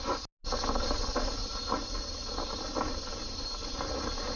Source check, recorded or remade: recorded